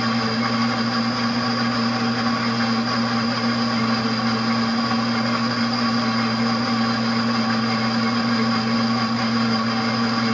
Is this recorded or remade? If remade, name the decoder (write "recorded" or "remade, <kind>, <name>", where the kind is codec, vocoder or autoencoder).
recorded